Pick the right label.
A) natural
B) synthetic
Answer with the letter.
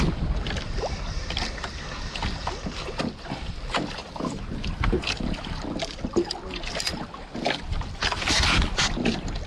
A